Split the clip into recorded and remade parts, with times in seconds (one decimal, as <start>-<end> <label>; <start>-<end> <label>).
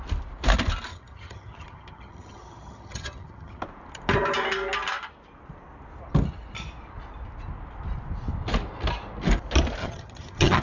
0.0-0.9 recorded; 0.9-3.6 remade; 3.6-9.8 recorded; 9.8-10.6 remade